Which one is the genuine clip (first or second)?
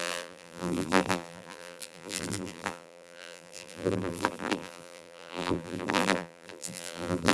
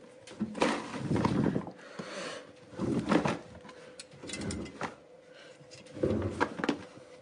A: second